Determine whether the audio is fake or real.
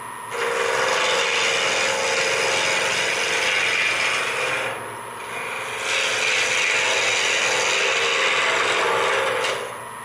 real